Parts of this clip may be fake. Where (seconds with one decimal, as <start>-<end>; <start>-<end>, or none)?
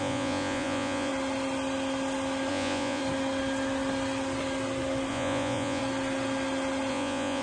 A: 0.0-1.1; 2.5-3.0; 5.1-5.8; 6.9-7.4